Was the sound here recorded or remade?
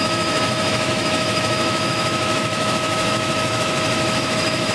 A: remade